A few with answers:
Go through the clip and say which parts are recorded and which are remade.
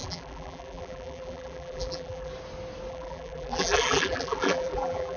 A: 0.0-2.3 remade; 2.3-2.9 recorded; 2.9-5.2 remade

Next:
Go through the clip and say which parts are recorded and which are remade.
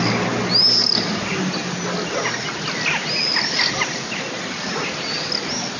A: 0.0-5.8 recorded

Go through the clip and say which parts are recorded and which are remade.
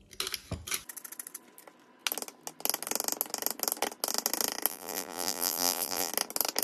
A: 0.0-4.7 recorded; 4.7-6.1 remade; 6.1-6.6 recorded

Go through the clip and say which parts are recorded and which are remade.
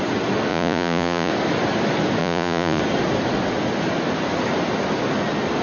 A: 0.0-0.5 recorded; 0.5-1.3 remade; 1.3-2.2 recorded; 2.2-2.8 remade; 2.8-5.6 recorded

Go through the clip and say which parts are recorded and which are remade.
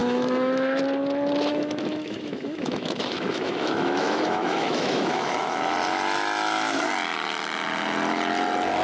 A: 0.0-0.8 remade; 0.8-1.5 recorded; 1.5-5.6 remade; 5.6-8.8 recorded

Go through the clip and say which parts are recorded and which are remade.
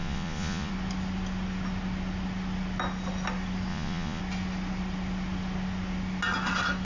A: 0.0-0.7 remade; 0.7-3.7 recorded; 3.7-4.2 remade; 4.2-6.8 recorded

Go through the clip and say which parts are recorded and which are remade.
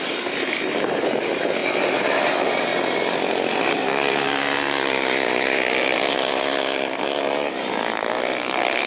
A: 0.0-2.7 remade; 2.7-3.7 recorded; 3.7-8.9 remade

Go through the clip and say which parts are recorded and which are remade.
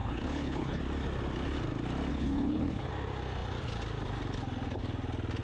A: 0.0-0.8 remade; 0.8-2.1 recorded; 2.1-2.9 remade; 2.9-5.4 recorded